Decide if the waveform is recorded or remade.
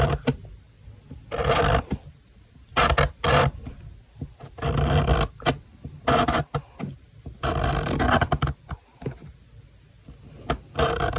recorded